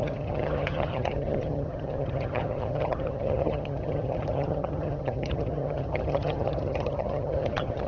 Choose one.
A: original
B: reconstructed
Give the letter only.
B